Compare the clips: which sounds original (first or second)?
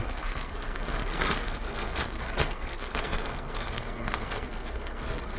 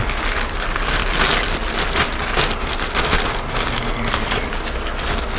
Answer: second